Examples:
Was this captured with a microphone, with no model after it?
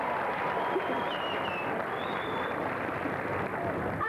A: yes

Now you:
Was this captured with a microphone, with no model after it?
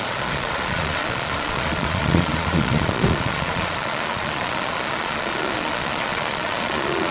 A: no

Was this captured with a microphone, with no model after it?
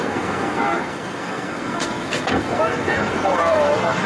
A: no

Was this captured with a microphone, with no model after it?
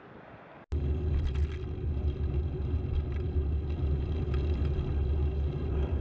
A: yes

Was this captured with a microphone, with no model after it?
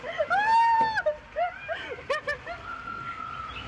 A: yes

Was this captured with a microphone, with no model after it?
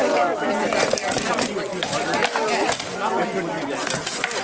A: yes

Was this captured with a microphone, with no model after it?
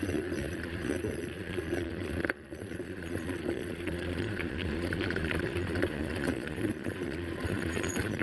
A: no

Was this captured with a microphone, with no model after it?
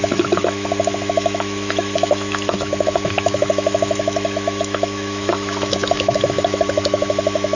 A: no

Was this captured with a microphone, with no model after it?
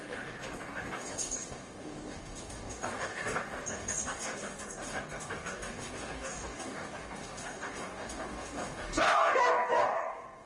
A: no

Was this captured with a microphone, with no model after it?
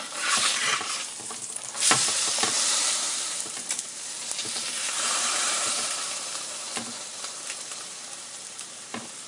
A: no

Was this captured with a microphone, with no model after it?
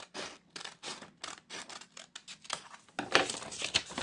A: yes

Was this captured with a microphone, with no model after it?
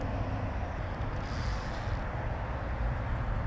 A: yes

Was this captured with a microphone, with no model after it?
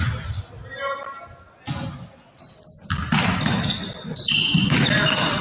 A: yes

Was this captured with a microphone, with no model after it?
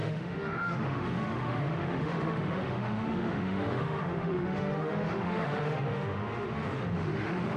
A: no